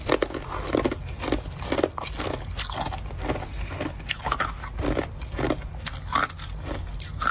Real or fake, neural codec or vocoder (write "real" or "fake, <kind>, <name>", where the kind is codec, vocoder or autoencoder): real